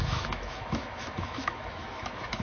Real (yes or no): no